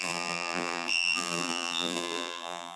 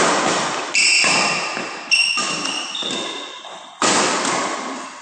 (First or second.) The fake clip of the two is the first